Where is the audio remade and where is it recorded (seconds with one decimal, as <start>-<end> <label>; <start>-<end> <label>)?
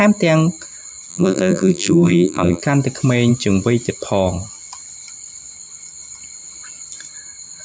0.0-1.1 recorded; 1.1-2.6 remade; 2.6-7.6 recorded